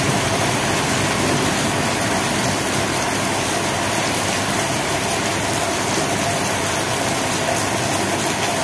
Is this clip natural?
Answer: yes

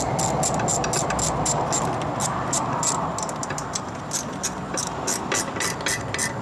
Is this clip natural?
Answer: yes